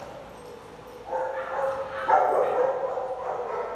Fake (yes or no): no